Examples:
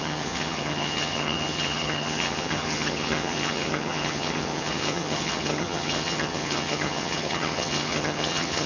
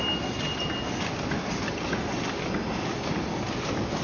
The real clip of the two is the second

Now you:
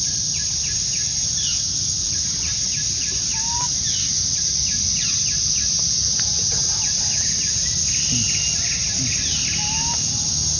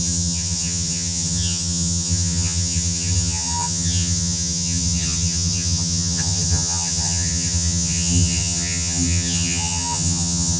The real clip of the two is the first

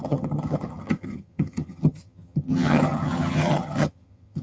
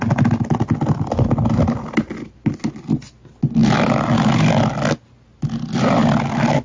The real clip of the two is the second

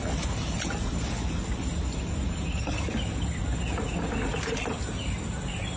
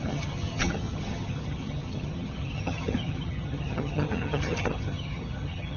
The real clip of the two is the first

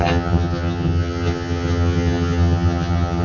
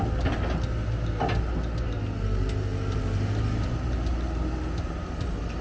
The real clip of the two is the second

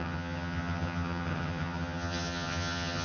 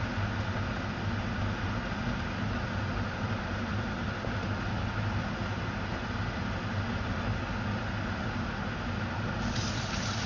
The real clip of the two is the second